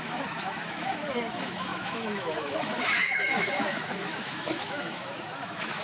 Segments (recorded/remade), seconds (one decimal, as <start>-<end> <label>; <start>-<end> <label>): 0.0-5.8 remade